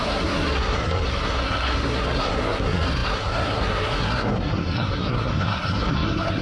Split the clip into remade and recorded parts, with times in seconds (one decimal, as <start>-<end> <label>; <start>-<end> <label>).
0.0-6.4 remade